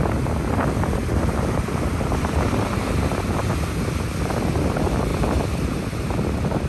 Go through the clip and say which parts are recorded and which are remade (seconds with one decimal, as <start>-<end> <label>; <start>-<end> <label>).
0.0-1.0 recorded; 1.0-2.4 remade; 2.4-5.1 recorded; 5.1-6.1 remade; 6.1-6.7 recorded